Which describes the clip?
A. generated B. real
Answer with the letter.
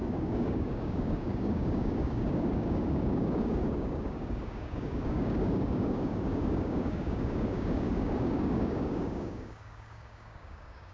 A